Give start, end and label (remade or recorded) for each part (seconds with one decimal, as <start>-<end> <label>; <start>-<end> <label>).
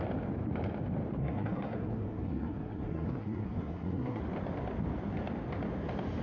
0.0-1.2 recorded; 1.2-4.2 remade; 4.2-6.2 recorded